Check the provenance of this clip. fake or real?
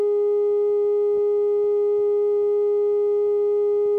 real